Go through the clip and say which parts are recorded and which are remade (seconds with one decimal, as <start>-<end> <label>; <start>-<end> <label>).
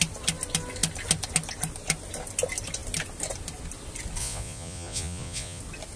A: 0.0-4.2 recorded; 4.2-5.6 remade; 5.6-6.0 recorded